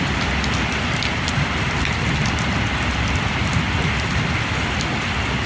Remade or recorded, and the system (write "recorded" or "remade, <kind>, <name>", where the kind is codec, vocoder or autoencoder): recorded